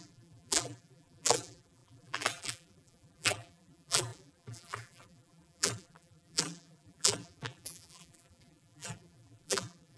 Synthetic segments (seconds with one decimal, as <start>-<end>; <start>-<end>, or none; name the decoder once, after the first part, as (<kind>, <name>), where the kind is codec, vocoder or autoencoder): 0.0-10.0 (vocoder, BigVGAN v2)